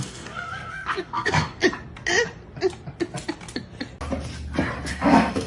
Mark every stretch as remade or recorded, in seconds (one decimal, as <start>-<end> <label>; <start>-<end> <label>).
0.0-1.6 remade; 1.6-4.9 recorded; 4.9-5.5 remade